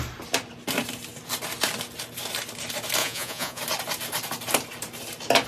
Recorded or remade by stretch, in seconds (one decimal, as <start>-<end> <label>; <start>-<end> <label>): 0.0-3.0 recorded; 3.0-3.6 remade; 3.6-5.5 recorded